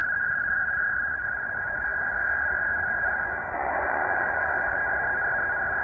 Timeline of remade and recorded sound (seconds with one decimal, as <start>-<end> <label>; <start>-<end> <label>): 0.0-4.8 remade; 4.8-5.8 recorded